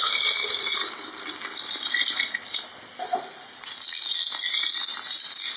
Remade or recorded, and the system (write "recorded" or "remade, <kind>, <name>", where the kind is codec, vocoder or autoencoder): recorded